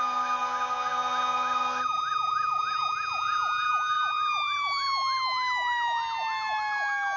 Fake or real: real